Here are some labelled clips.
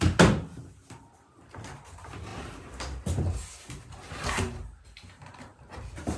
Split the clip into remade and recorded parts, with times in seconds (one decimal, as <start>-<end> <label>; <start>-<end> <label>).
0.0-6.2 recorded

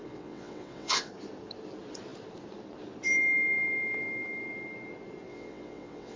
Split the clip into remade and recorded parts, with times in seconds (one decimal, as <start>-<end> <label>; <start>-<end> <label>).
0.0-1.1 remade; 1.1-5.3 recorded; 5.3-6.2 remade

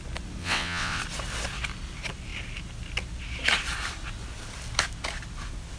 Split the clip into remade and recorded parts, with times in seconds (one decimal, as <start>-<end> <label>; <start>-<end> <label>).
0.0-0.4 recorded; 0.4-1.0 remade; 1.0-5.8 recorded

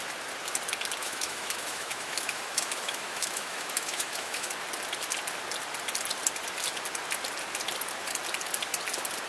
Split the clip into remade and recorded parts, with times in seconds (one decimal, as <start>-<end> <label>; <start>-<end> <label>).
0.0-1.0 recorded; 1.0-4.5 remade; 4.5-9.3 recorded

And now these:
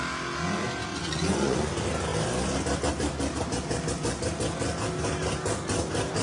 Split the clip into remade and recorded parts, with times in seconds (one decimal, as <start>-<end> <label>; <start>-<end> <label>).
0.0-0.9 recorded; 0.9-1.7 remade; 1.7-6.2 recorded

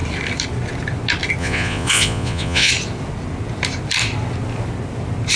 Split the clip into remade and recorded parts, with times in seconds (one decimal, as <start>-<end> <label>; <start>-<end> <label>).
0.0-1.4 recorded; 1.4-2.7 remade; 2.7-5.4 recorded